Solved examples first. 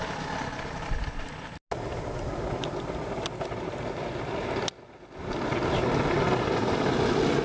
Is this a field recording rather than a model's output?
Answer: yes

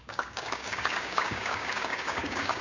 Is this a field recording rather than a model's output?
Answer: no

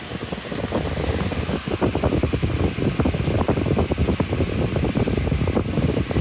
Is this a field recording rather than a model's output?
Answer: yes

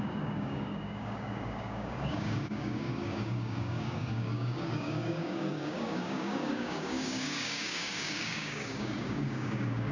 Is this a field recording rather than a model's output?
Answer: no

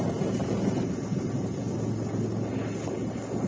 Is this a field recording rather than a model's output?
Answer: yes